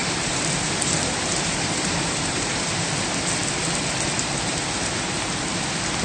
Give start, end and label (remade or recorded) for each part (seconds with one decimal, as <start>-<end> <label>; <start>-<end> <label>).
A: 0.0-2.7 remade; 2.7-6.0 recorded